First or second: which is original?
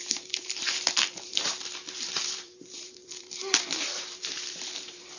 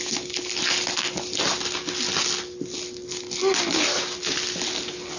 second